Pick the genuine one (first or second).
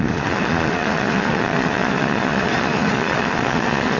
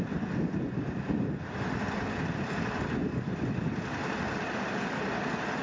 second